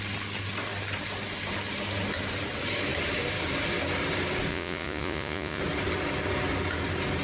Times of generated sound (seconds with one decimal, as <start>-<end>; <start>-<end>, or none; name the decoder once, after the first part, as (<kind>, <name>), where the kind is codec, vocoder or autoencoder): 4.5-5.6 (vocoder, Vocos)